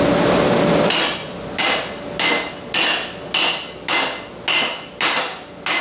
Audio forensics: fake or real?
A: real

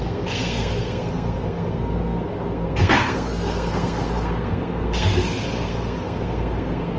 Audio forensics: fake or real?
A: fake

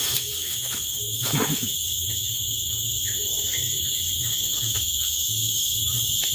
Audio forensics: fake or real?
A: fake